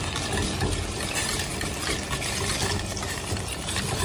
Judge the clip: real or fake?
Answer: real